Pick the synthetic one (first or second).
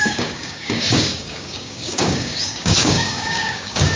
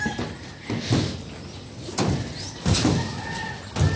first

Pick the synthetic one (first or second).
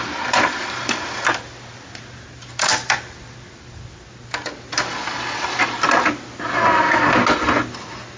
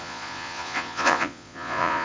second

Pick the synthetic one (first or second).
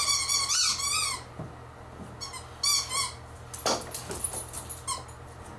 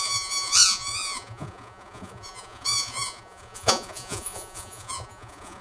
second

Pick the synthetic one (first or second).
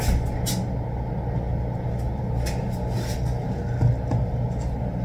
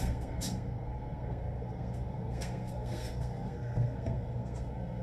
second